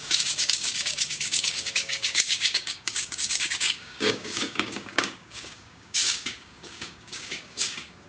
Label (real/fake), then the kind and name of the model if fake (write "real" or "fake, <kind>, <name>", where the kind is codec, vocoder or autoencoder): fake, codec, DAC